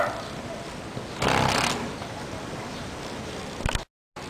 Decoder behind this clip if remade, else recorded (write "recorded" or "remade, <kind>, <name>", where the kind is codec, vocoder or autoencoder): recorded